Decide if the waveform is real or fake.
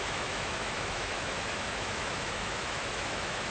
fake